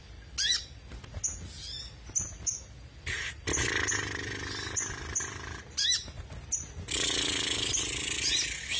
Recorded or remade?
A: recorded